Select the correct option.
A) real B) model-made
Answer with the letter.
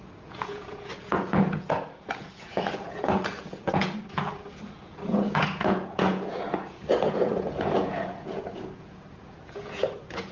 B